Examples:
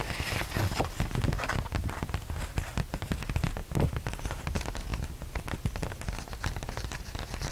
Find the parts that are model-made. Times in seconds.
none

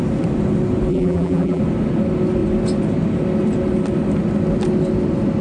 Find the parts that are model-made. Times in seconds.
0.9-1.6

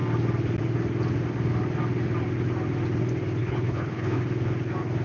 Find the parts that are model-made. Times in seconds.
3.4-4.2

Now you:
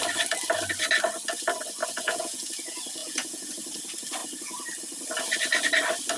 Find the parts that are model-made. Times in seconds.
1.8-2.5; 3.0-3.5

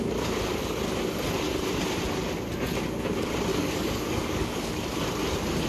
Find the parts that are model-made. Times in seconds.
3.5-4.7

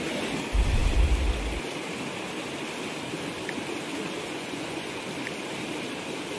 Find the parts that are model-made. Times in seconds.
4.2-5.0